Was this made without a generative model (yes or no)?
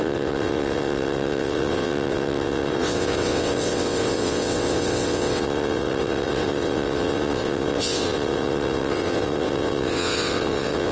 no